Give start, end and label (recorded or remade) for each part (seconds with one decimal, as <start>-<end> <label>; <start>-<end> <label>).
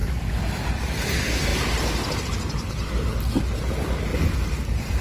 0.0-0.8 remade; 0.8-4.1 recorded; 4.1-5.0 remade